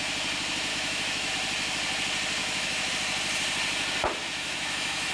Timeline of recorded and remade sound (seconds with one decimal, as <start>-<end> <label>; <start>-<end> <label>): 0.0-0.7 recorded; 0.7-1.3 remade; 1.3-2.4 recorded; 2.4-2.9 remade; 2.9-4.2 recorded; 4.2-5.1 remade